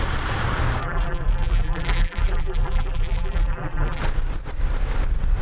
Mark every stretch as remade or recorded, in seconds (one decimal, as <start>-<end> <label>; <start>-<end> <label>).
0.0-0.8 recorded; 0.8-4.0 remade; 4.0-5.4 recorded